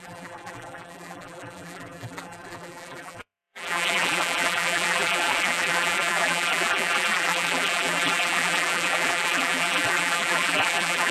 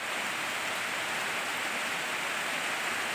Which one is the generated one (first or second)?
first